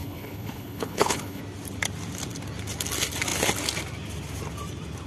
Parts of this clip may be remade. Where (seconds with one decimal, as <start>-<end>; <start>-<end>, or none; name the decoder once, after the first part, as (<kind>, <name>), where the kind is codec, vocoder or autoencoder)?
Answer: 0.0-1.4 (codec, HILCodec)